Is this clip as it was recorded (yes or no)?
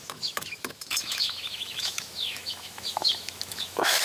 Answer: no